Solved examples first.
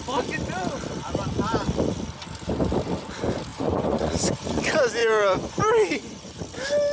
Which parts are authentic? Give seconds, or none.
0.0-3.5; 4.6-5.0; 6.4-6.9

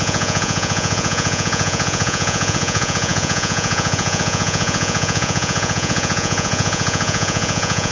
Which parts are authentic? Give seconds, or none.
none

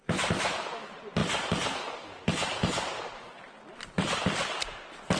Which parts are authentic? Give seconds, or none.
0.0-5.2

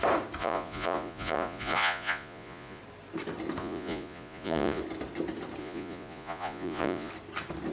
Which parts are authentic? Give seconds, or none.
0.0-0.4; 2.8-3.6; 4.8-5.6; 7.1-7.7

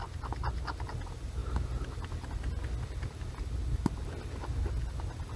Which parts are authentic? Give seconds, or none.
0.0-5.4